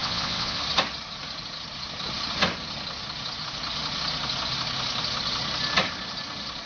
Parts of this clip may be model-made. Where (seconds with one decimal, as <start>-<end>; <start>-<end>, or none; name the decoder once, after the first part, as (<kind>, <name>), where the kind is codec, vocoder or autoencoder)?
0.0-0.6 (vocoder, WaveNeXt)